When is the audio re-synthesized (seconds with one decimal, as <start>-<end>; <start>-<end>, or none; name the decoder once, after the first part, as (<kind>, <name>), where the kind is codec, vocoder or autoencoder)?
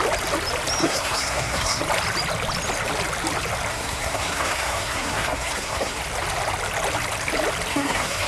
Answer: 0.8-1.8 (codec, SNAC); 3.7-6.0; 7.7-8.3